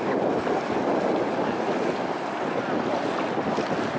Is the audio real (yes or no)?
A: yes